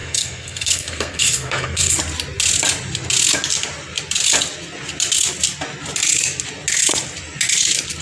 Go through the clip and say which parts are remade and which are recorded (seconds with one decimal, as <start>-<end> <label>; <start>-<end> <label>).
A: 0.0-1.9 remade; 1.9-8.0 recorded